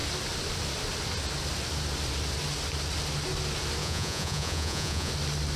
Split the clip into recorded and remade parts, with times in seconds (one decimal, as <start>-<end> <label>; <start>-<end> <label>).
0.0-3.8 recorded; 3.8-5.1 remade; 5.1-5.6 recorded